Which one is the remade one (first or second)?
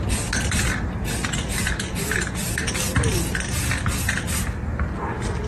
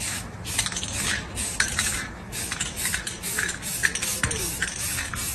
second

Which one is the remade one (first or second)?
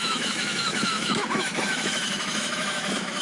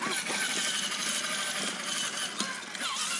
first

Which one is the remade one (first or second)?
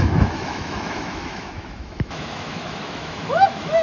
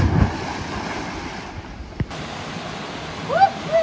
first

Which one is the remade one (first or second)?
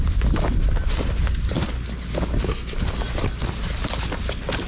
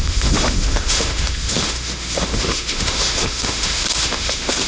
second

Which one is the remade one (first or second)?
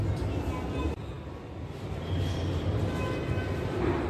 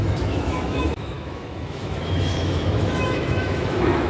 second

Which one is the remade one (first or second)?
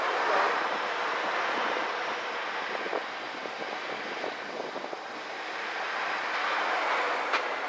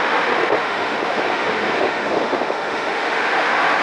second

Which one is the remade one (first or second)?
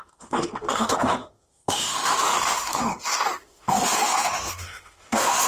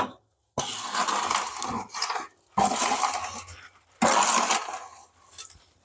first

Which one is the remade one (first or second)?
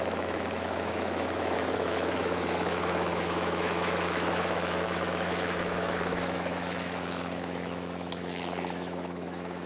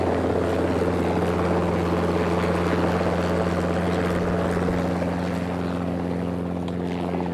first